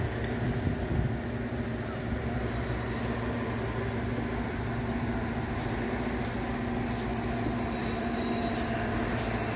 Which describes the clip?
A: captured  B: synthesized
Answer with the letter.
A